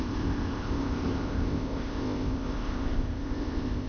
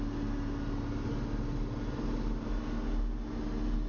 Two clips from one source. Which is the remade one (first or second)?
first